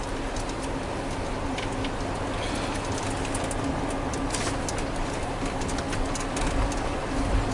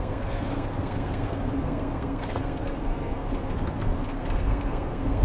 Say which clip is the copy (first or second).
second